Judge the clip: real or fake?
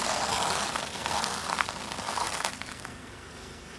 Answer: fake